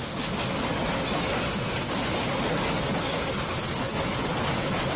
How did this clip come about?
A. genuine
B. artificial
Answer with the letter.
A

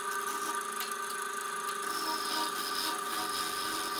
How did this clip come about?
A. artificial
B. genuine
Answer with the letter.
B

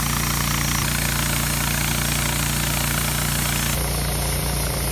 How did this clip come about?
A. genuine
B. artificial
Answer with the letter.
A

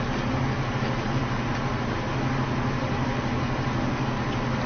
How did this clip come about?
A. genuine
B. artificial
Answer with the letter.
A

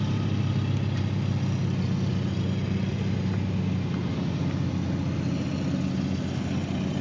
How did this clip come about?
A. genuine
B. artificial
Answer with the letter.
A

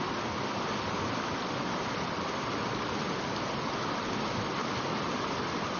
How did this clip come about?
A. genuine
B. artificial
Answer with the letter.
A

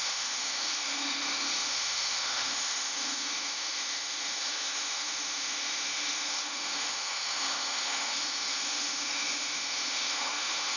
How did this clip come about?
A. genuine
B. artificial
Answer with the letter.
B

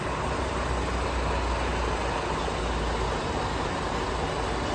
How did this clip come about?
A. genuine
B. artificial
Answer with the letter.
A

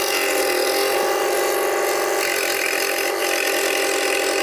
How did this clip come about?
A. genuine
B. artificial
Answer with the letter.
A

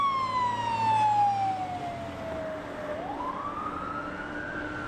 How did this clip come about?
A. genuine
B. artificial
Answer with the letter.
A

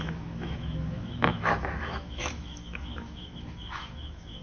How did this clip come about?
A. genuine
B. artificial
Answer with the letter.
B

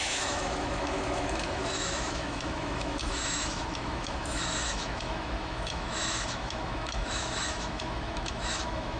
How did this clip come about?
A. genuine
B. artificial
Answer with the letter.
B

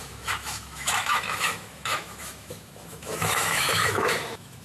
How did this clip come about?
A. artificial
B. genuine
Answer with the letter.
A